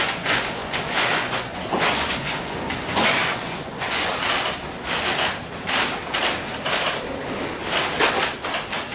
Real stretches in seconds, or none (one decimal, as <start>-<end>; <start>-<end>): 4.1-8.9